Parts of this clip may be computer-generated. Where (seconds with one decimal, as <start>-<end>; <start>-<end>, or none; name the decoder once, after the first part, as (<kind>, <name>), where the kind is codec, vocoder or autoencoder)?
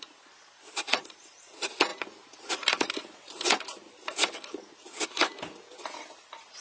1.9-3.5 (vocoder, BigVGAN v2)